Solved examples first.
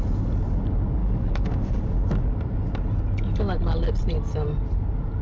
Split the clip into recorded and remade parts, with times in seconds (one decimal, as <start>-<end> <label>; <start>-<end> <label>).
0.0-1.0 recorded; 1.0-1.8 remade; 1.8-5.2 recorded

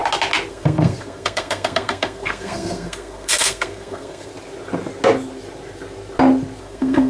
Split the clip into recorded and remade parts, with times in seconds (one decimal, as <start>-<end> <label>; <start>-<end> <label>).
0.0-0.5 recorded; 0.5-4.3 remade; 4.3-6.6 recorded; 6.6-7.1 remade

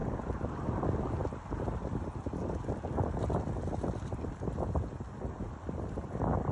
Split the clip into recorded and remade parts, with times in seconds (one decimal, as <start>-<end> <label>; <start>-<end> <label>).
0.0-0.5 remade; 0.5-6.5 recorded

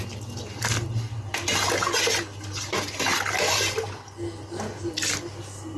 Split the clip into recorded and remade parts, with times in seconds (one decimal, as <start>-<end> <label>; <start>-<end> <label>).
0.0-5.8 recorded

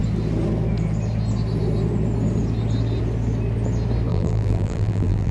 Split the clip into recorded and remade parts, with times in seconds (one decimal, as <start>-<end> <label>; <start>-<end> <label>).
0.0-4.1 recorded; 4.1-5.3 remade

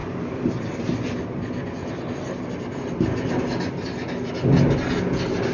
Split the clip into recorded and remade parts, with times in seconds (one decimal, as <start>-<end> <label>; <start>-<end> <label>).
0.0-5.5 recorded